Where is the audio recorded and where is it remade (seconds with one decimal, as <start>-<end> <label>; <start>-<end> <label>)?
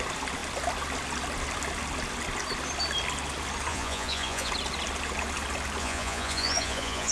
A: 0.0-3.7 recorded; 3.7-4.5 remade; 4.5-5.8 recorded; 5.8-7.1 remade